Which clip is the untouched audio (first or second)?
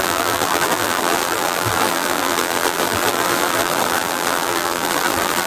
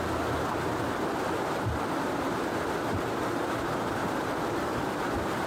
second